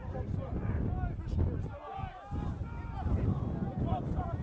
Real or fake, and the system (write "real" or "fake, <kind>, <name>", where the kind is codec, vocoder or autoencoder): real